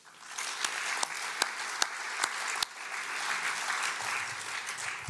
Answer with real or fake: real